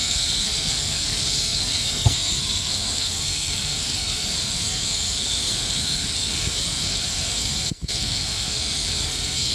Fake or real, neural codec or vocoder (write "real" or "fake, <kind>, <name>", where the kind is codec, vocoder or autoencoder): fake, codec, SNAC